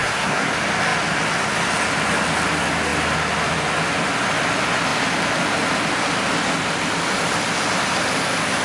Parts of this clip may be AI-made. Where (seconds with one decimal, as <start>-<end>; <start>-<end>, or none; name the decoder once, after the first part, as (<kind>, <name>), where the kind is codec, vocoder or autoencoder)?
0.0-0.5 (codec, SNAC)